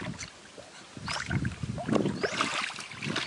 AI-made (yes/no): no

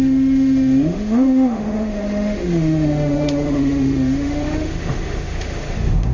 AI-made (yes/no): yes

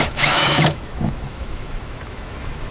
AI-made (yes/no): yes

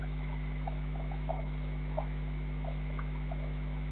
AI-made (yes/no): yes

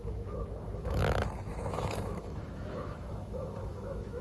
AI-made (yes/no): yes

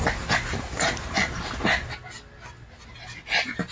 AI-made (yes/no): no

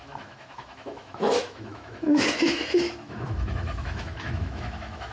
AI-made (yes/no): yes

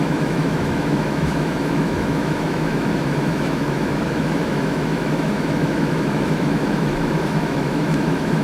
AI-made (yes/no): yes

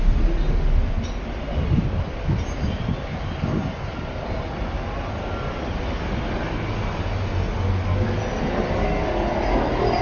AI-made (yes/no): no